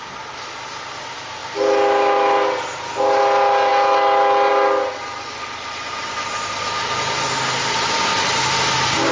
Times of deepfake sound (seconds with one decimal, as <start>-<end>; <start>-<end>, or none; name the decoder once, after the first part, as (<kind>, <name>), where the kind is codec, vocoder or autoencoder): none